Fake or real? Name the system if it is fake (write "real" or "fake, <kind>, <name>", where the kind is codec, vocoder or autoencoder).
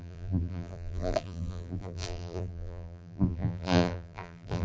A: fake, vocoder, BigVGAN v2